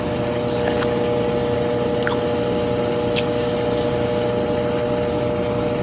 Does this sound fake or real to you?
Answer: real